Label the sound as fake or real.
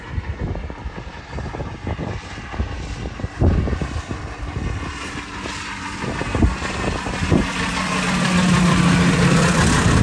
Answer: real